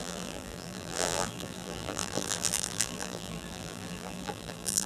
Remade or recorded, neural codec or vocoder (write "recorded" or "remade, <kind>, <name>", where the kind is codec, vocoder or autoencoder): remade, vocoder, BigVGAN v2